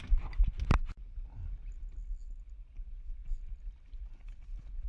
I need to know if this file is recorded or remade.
recorded